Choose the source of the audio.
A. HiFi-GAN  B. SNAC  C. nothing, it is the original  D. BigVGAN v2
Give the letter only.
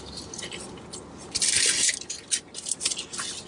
C